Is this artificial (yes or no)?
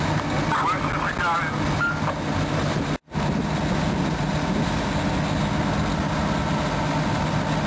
no